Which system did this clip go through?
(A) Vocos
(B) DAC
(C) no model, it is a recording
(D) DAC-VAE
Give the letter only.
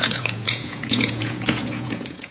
A